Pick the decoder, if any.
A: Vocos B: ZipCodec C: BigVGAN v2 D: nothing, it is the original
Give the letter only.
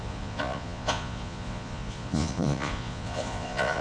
A